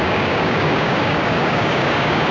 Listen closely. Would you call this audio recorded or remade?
remade